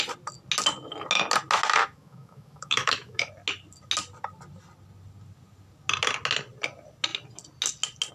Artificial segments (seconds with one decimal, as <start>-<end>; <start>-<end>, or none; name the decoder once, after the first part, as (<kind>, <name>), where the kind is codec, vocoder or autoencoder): 1.8-3.3 (autoencoder, DAC-VAE)